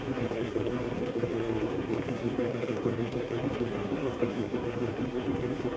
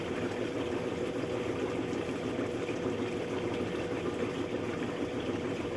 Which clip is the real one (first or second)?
second